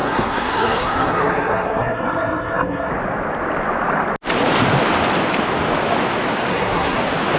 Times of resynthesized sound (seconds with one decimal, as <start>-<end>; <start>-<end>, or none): 0.0-2.9; 6.5-7.0